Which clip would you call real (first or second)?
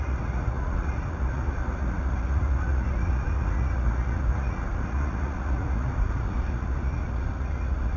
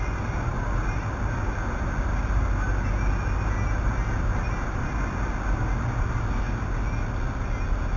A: second